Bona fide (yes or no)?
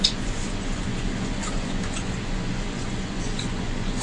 no